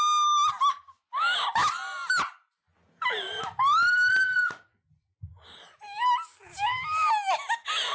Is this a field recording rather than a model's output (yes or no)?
yes